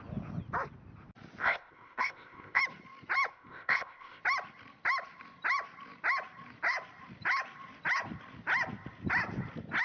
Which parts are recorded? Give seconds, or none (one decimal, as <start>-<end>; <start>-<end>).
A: 0.0-1.4; 2.6-3.3; 4.2-9.8